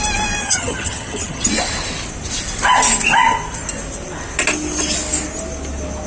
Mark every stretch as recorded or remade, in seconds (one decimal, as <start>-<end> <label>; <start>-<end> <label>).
0.0-0.4 recorded; 0.4-1.5 remade; 1.5-6.1 recorded